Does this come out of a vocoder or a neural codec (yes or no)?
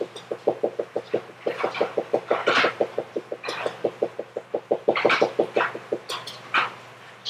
no